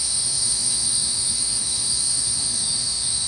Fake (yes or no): yes